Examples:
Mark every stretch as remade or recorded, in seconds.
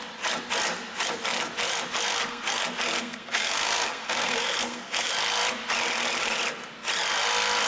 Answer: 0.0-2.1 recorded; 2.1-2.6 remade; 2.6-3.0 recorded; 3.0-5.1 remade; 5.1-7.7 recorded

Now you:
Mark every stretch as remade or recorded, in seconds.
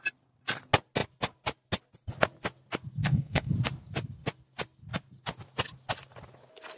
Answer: 0.0-3.0 recorded; 3.0-3.5 remade; 3.5-6.8 recorded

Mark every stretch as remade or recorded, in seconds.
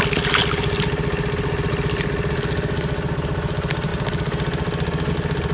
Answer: 0.0-5.5 recorded